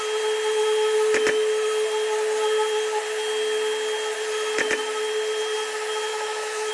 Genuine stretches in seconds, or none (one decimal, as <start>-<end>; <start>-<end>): 0.0-6.1

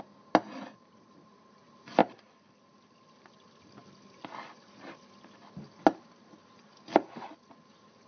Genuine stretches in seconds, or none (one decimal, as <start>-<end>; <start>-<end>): 0.0-8.1

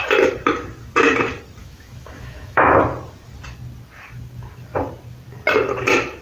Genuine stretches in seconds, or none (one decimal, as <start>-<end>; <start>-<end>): 0.0-1.6; 2.8-6.2